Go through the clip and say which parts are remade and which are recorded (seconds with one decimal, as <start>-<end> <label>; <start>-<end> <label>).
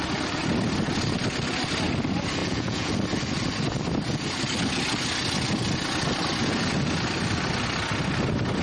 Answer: 0.0-2.4 recorded; 2.4-2.9 remade; 2.9-8.6 recorded